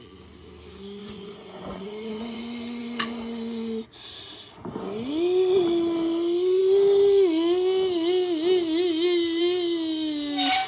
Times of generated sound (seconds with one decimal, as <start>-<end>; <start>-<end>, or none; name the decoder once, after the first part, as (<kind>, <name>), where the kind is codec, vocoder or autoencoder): 1.0-2.4 (vocoder, Vocos)